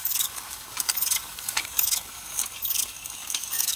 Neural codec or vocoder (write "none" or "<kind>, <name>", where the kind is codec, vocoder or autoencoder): codec, DAC